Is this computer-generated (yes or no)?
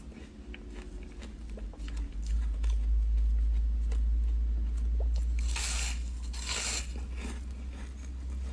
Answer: no